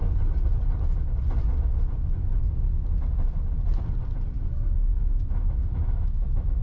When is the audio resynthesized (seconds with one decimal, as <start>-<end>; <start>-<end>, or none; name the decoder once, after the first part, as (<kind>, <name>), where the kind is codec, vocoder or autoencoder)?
4.9-6.6 (autoencoder, DAC-VAE)